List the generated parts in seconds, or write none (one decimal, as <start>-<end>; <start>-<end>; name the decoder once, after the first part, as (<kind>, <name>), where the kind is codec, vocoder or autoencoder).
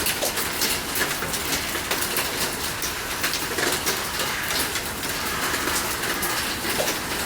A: none